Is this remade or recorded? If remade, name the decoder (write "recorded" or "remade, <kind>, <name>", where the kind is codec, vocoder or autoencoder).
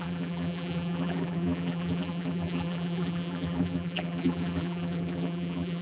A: remade, vocoder, BigVGAN v2